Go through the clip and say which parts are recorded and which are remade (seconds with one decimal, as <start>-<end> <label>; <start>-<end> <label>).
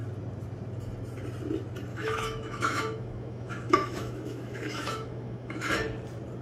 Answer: 0.0-1.9 recorded; 1.9-5.7 remade; 5.7-6.4 recorded